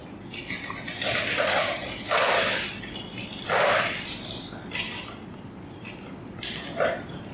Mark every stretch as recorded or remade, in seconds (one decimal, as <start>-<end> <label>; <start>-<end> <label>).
0.0-1.8 recorded; 1.8-2.3 remade; 2.3-7.3 recorded